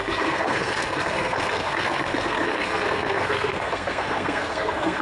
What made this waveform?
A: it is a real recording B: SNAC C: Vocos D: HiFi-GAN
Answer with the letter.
B